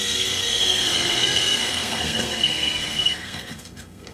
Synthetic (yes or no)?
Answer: yes